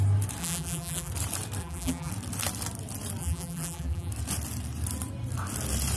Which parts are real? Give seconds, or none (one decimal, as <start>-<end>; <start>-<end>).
0.0-0.4; 1.1-1.6; 2.1-3.2; 4.1-6.0